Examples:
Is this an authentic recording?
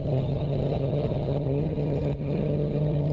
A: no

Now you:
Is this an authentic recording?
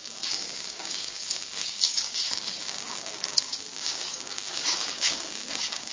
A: no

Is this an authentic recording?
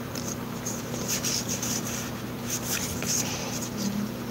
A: no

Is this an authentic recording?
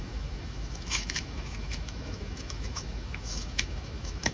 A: no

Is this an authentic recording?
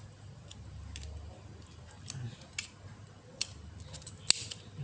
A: yes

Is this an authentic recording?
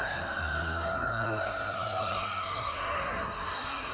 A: no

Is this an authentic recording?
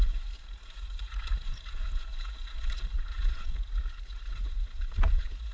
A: no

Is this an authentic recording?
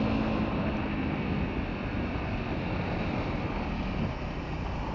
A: yes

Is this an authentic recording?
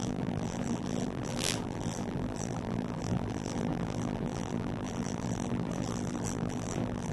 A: no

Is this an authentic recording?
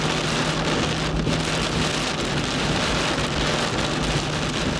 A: yes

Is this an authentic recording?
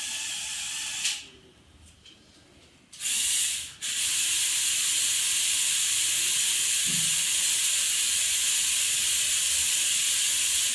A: yes